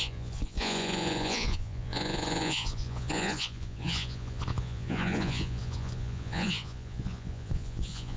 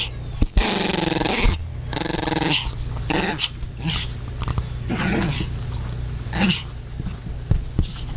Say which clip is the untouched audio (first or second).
second